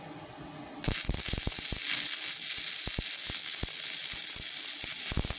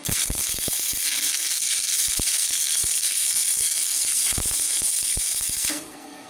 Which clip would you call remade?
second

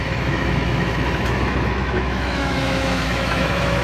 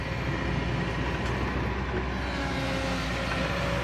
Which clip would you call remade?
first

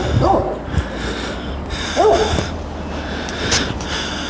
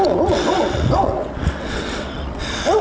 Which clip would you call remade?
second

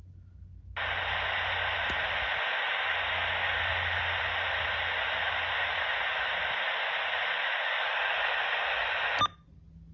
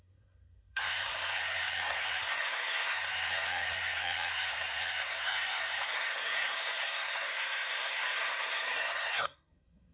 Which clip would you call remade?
second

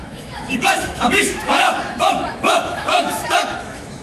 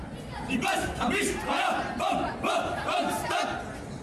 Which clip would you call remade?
first